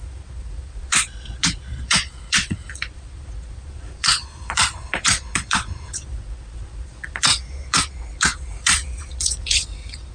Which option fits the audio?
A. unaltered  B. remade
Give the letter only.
B